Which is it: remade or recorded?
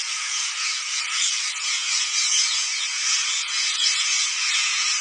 remade